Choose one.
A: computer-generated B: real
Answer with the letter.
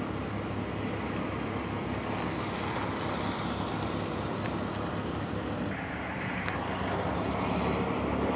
B